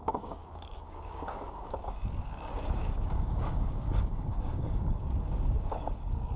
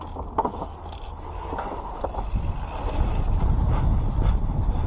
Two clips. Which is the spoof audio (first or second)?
first